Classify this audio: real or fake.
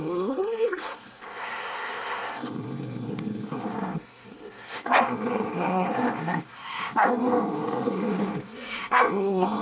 fake